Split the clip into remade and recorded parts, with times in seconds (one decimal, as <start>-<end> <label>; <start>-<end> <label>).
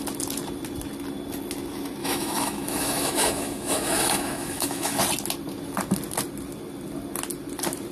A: 0.0-2.0 recorded; 2.0-5.0 remade; 5.0-7.9 recorded